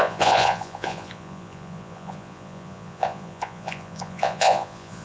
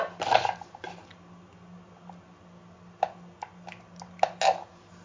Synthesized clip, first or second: first